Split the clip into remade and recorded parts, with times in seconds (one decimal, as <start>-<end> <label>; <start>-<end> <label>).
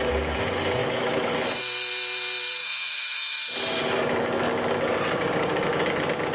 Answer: 0.0-0.8 recorded; 0.8-1.3 remade; 1.3-2.6 recorded; 2.6-3.4 remade; 3.4-6.3 recorded